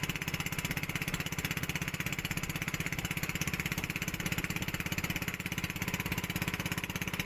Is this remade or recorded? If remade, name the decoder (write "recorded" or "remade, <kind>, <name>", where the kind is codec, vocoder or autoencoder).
recorded